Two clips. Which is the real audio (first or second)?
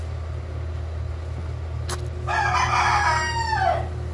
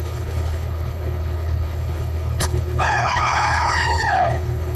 first